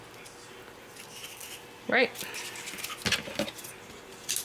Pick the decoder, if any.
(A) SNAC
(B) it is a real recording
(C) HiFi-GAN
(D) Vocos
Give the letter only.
B